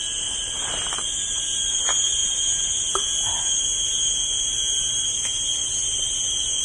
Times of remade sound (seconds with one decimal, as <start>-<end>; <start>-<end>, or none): none